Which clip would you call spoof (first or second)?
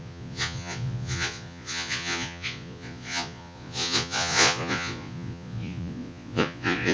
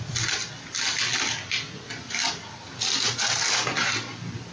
first